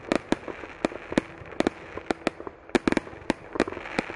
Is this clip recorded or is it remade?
recorded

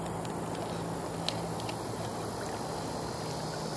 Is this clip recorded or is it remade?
recorded